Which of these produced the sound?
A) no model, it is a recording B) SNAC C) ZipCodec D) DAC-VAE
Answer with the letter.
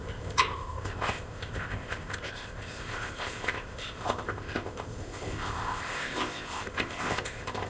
C